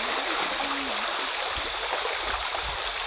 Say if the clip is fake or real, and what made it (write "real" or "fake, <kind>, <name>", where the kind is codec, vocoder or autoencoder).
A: real